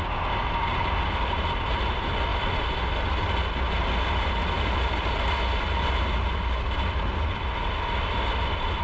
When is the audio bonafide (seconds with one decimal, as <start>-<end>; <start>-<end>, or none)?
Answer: 0.0-8.8